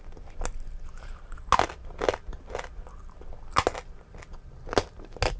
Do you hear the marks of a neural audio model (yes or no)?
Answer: no